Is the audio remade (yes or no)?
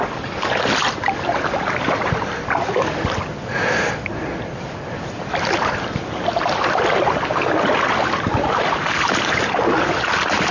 yes